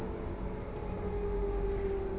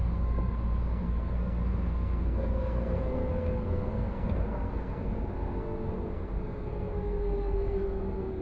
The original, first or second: first